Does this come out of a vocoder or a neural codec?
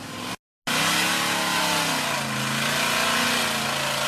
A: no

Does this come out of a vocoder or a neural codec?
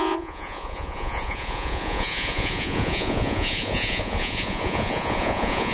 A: yes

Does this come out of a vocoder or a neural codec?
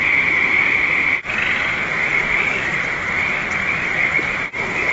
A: no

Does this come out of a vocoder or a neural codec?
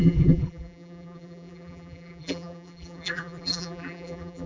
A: yes